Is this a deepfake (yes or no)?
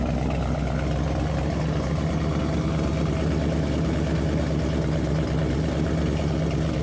no